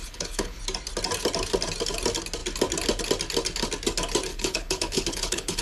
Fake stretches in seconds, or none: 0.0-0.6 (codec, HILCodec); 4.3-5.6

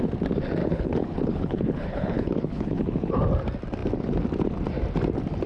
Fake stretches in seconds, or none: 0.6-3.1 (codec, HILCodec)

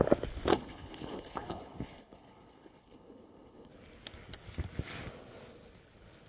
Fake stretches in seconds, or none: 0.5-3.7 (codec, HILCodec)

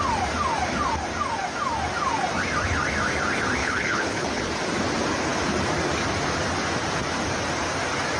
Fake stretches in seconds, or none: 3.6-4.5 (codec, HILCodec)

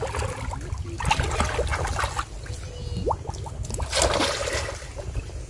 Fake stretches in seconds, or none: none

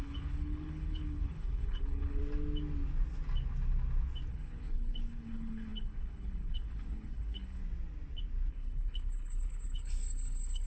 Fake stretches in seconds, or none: 0.0-2.2 (codec, HILCodec); 4.3-7.6; 8.5-10.7

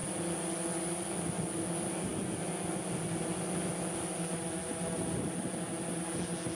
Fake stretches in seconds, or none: none

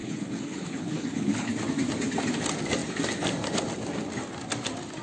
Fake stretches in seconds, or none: 0.0-1.5 (codec, HILCodec)